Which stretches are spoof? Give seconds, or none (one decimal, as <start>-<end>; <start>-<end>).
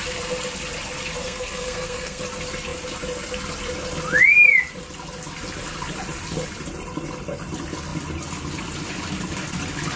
1.2-2.2